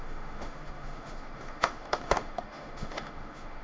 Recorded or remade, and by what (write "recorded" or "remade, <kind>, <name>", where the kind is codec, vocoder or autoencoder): remade, autoencoder, DAC-VAE